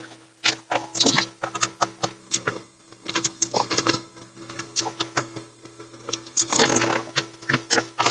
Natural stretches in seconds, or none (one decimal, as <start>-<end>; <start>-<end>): 0.0-2.2; 4.8-5.2; 6.6-8.1